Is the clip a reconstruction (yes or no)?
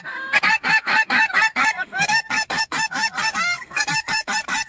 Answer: yes